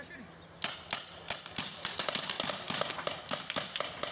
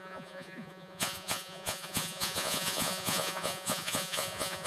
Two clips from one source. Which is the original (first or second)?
first